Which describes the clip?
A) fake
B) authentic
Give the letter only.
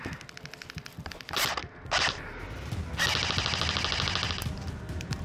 B